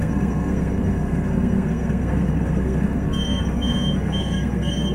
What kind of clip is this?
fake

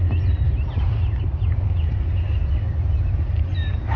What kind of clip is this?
real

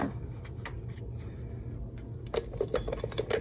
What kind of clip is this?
real